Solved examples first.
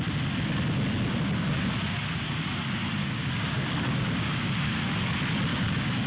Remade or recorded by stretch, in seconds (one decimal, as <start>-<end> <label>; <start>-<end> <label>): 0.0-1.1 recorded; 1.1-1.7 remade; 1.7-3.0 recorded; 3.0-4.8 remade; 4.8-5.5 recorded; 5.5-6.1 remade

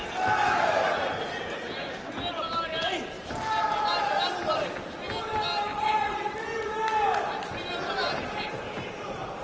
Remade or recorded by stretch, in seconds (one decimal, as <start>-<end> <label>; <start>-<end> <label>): 0.0-5.7 recorded; 5.7-6.3 remade; 6.3-9.4 recorded

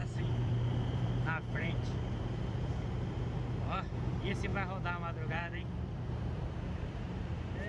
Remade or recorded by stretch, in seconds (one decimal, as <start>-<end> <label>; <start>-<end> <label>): 0.0-4.5 remade; 4.5-5.3 recorded; 5.3-7.7 remade

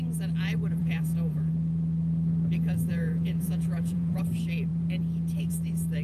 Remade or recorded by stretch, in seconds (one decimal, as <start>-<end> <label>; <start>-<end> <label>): 0.0-0.8 recorded; 0.8-1.5 remade; 1.5-2.9 recorded; 2.9-4.2 remade; 4.2-6.0 recorded

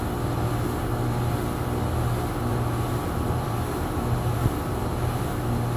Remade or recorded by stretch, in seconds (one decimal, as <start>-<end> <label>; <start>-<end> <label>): 0.0-2.5 recorded; 2.5-5.3 remade; 5.3-5.8 recorded

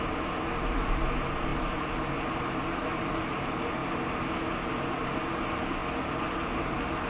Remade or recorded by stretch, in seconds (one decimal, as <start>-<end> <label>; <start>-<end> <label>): 0.0-3.8 remade; 3.8-4.9 recorded; 4.9-5.8 remade; 5.8-7.1 recorded